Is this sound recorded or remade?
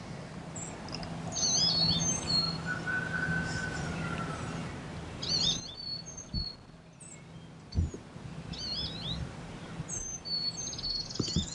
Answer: recorded